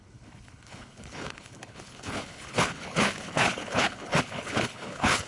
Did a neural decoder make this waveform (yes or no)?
yes